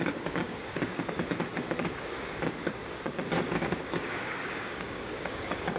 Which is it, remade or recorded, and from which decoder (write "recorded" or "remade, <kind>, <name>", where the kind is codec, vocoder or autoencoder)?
remade, codec, DAC